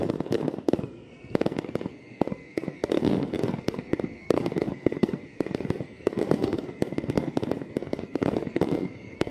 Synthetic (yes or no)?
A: yes